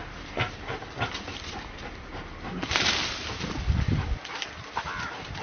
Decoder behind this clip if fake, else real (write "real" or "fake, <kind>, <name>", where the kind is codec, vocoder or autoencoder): real